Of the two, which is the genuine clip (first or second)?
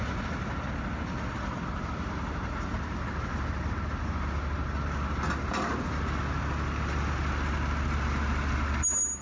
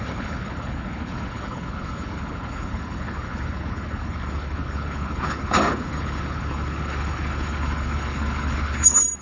first